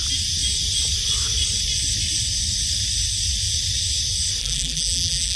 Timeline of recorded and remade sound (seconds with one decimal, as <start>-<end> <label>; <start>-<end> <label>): 0.0-4.4 recorded; 4.4-5.4 remade